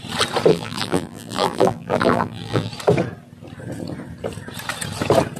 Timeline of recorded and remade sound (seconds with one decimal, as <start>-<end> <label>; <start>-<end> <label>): 0.0-0.5 recorded; 0.5-2.7 remade; 2.7-5.4 recorded